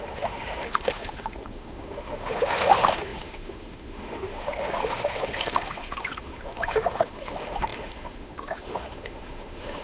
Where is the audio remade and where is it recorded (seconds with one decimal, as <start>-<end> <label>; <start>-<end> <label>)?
0.0-9.8 remade